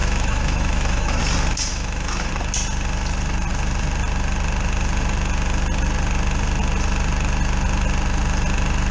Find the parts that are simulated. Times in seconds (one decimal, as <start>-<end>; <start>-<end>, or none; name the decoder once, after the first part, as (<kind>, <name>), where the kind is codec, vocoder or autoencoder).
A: 0.0-1.2 (autoencoder, DAC-VAE); 1.7-2.3